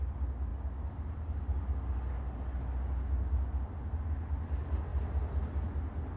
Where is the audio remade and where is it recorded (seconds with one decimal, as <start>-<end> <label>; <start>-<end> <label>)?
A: 0.0-6.2 recorded